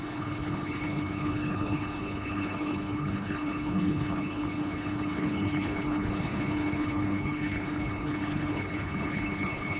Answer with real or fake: fake